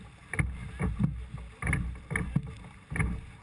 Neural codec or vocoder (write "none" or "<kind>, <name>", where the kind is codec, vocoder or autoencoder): none